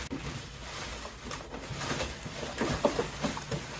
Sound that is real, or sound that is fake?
real